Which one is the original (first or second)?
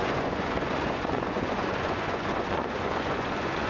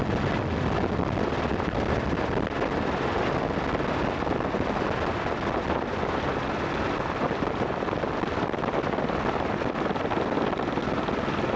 second